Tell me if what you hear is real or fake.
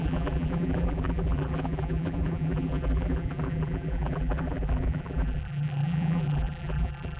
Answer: fake